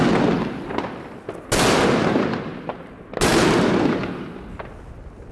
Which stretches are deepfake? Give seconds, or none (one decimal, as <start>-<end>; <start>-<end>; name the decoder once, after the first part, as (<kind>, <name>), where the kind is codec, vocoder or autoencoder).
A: none